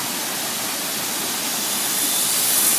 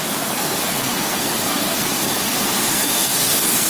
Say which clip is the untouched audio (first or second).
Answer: first